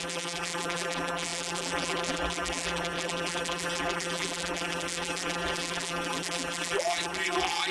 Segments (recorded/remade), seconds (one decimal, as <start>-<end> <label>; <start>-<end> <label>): 0.0-7.7 remade

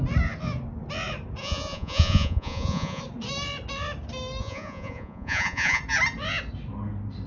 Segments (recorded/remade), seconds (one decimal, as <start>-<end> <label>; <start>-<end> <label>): 0.0-1.4 recorded; 1.4-3.0 remade; 3.0-4.4 recorded; 4.4-5.8 remade; 5.8-7.3 recorded

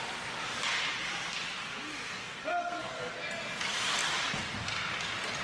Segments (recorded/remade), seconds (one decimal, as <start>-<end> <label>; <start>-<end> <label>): 0.0-2.2 recorded; 2.2-3.1 remade; 3.1-5.4 recorded